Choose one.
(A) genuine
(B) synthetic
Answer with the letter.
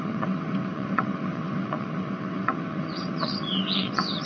B